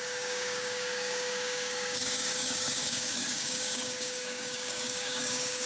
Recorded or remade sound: remade